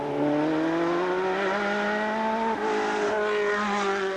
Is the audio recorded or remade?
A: recorded